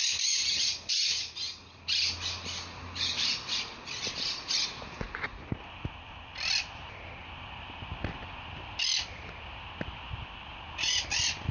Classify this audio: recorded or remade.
recorded